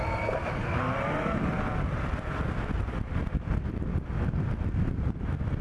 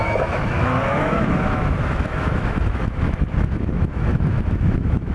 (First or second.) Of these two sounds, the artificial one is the second